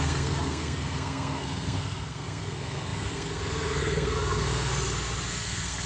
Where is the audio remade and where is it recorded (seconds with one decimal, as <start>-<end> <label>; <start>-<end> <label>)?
0.0-4.7 remade; 4.7-5.3 recorded; 5.3-5.9 remade

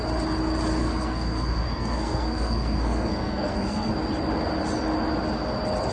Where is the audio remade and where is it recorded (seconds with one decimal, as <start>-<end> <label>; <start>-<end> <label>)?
0.0-0.8 recorded; 0.8-3.9 remade; 3.9-5.9 recorded

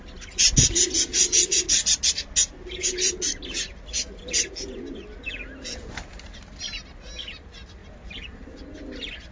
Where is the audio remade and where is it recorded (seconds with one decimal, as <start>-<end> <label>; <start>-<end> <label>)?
0.0-9.3 recorded

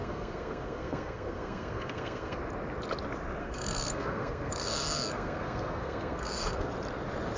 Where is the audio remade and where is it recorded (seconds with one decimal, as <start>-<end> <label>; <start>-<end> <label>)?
0.0-2.4 remade; 2.4-3.4 recorded; 3.4-6.7 remade; 6.7-7.4 recorded